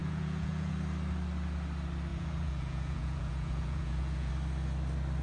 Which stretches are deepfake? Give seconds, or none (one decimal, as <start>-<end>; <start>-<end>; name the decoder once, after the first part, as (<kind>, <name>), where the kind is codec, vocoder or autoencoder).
0.0-0.7 (vocoder, Vocos); 2.1-4.3